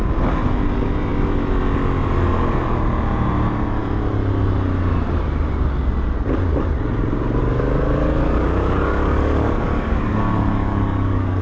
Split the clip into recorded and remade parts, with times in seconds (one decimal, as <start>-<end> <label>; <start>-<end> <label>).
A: 0.0-7.4 recorded; 7.4-11.4 remade